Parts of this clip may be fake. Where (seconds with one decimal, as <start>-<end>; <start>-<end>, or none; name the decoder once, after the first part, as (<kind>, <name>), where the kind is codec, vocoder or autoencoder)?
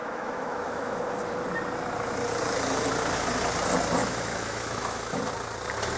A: 0.0-1.0 (autoencoder, DAC-VAE); 4.0-5.2